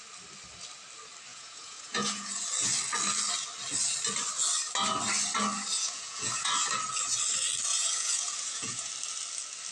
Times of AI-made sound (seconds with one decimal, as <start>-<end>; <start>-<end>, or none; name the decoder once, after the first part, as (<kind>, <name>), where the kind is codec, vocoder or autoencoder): 1.3-2.5 (vocoder, Vocos); 5.7-6.5; 7.7-8.9